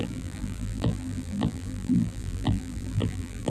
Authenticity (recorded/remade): remade